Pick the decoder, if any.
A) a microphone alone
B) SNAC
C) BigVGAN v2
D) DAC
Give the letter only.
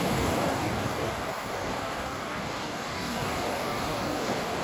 D